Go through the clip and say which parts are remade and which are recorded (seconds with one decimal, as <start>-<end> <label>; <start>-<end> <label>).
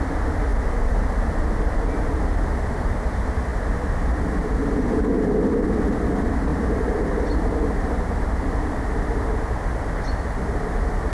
0.0-6.5 recorded; 6.5-8.2 remade; 8.2-11.1 recorded